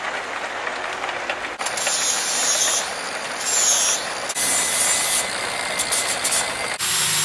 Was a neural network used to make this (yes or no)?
no